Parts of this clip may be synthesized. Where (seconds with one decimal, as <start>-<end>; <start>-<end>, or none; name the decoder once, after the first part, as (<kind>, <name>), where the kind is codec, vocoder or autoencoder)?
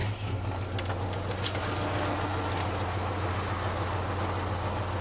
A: none